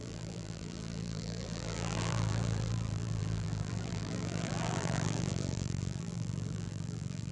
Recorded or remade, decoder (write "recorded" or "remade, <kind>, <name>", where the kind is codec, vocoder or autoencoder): remade, vocoder, BigVGAN v2